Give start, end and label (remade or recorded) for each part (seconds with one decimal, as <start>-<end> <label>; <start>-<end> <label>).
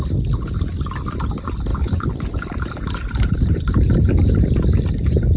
0.0-5.4 recorded